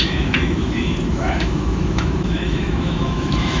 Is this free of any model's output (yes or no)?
no